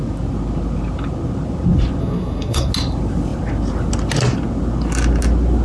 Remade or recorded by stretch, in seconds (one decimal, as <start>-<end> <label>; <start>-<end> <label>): 0.0-2.0 recorded; 2.0-2.7 remade; 2.7-5.6 recorded